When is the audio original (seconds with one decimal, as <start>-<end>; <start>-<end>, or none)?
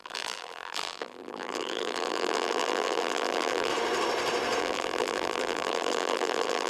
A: 3.7-4.6